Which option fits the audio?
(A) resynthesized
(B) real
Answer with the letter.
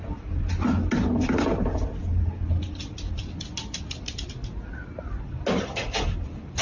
B